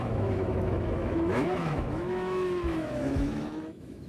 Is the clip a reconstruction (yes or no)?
yes